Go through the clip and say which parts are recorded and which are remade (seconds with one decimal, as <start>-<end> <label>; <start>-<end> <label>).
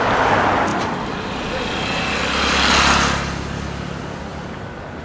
0.0-0.7 recorded; 0.7-1.7 remade; 1.7-5.0 recorded